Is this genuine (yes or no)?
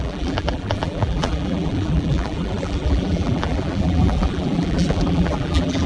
no